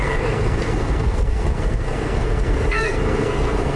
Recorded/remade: remade